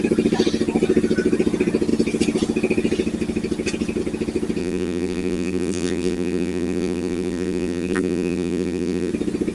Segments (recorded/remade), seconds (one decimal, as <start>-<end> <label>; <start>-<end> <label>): 0.0-4.6 recorded; 4.6-9.1 remade; 9.1-9.5 recorded